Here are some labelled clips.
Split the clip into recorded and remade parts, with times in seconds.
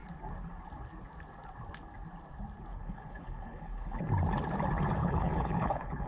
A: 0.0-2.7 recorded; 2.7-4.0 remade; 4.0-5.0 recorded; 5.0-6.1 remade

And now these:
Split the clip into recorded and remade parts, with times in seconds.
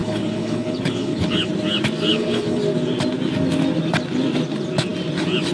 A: 0.0-1.5 remade; 1.5-2.1 recorded; 2.1-2.6 remade; 2.6-5.5 recorded